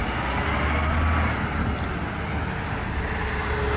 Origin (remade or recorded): recorded